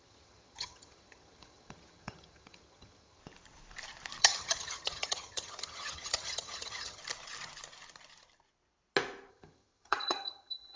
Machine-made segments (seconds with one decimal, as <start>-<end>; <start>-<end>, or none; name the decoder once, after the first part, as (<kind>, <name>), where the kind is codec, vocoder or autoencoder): 0.0-3.2 (vocoder, HiFi-GAN); 4.2-7.0; 9.3-10.8